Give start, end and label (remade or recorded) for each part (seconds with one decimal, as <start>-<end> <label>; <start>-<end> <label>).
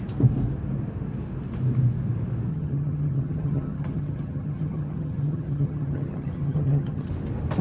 0.0-2.5 recorded; 2.5-7.1 remade; 7.1-7.6 recorded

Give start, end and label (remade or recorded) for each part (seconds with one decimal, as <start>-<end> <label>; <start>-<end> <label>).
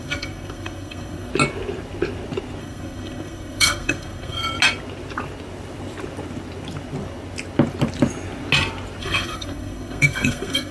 0.0-1.3 remade; 1.3-2.6 recorded; 2.6-4.4 remade; 4.4-9.0 recorded; 9.0-10.7 remade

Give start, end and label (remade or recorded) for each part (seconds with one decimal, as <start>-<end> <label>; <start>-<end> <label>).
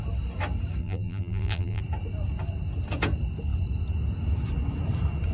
0.0-0.8 recorded; 0.8-1.8 remade; 1.8-5.3 recorded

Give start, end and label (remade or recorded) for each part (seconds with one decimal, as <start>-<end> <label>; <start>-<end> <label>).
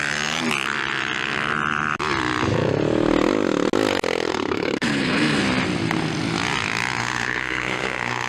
0.0-4.3 recorded; 4.3-5.4 remade; 5.4-7.0 recorded; 7.0-8.3 remade